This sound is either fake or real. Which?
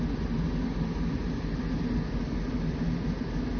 real